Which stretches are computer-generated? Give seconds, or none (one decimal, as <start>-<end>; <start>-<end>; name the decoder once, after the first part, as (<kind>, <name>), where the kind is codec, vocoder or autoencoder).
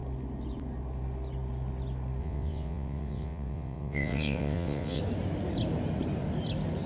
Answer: 2.2-5.0 (vocoder, WaveNeXt)